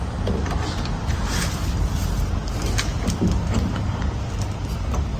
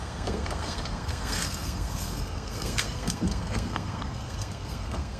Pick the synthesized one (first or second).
second